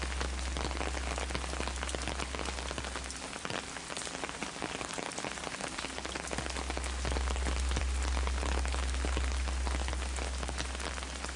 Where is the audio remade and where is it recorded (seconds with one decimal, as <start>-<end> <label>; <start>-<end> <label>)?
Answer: 0.0-11.4 recorded